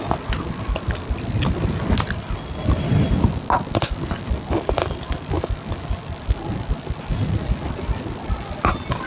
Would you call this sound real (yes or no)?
yes